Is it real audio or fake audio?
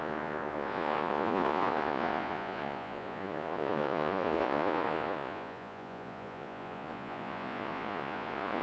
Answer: fake